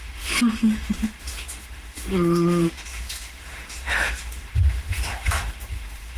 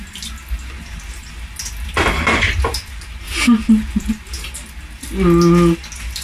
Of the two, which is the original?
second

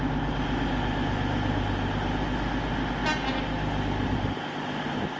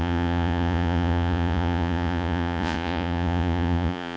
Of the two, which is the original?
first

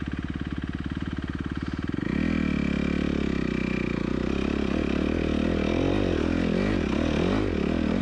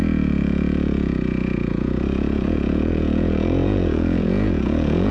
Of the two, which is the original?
first